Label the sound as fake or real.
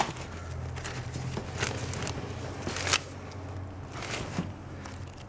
real